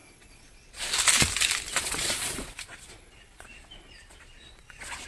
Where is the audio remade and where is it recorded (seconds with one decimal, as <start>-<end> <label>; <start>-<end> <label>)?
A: 0.0-0.9 remade; 0.9-1.7 recorded; 1.7-5.1 remade